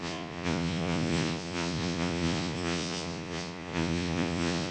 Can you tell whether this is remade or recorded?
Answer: remade